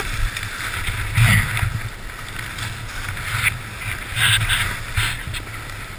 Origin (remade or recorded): recorded